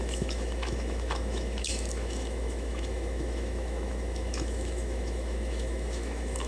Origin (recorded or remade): remade